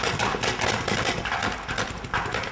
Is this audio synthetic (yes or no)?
no